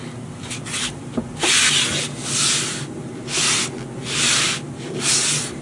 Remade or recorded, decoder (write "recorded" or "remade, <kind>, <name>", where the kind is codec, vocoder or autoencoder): recorded